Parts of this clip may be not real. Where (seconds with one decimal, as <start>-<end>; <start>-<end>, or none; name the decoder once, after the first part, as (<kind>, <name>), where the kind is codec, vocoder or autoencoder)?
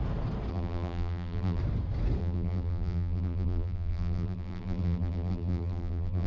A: 0.5-1.6 (vocoder, BigVGAN v2); 2.2-6.3